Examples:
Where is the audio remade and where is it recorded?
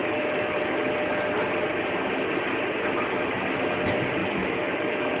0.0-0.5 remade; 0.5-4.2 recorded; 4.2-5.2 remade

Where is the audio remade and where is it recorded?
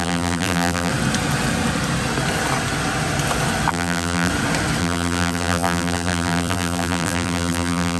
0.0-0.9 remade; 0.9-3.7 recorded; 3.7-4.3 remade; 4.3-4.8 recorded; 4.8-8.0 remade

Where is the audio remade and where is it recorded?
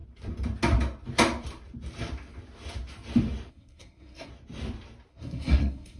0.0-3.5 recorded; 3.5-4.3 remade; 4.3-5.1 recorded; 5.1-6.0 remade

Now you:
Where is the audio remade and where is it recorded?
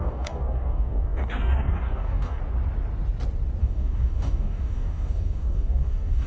0.0-2.4 remade; 2.4-3.6 recorded; 3.6-6.3 remade